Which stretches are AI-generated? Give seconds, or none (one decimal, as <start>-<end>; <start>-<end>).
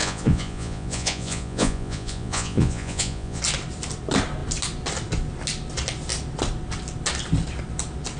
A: 0.0-3.4